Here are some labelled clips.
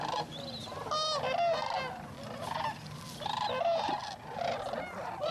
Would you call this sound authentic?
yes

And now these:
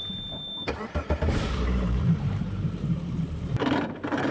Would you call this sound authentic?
no